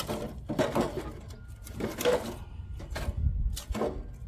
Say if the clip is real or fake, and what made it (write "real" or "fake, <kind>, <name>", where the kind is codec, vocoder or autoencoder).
real